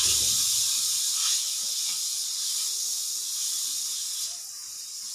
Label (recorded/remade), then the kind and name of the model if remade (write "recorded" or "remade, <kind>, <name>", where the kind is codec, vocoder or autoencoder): recorded